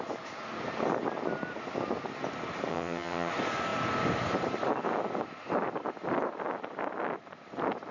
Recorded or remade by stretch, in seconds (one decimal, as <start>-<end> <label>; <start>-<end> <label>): 0.0-2.7 recorded; 2.7-3.3 remade; 3.3-7.9 recorded